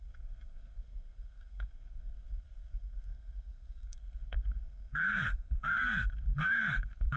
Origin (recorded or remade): remade